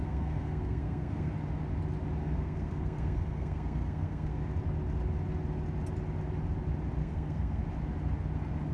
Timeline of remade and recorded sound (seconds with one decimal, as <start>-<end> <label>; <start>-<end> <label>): 0.0-1.3 remade; 1.3-2.2 recorded; 2.2-4.4 remade; 4.4-7.0 recorded; 7.0-7.6 remade; 7.6-8.7 recorded